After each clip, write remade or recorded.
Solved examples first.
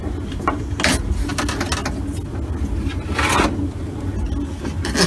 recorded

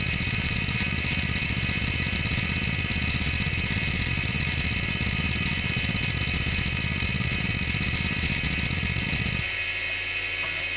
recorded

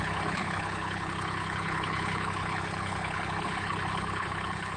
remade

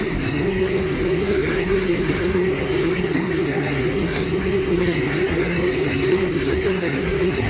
remade